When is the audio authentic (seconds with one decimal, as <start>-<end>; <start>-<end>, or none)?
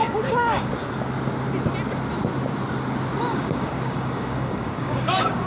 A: 0.7-3.3